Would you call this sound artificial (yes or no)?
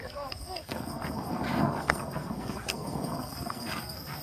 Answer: yes